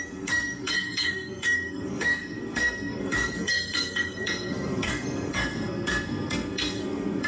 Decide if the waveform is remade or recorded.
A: remade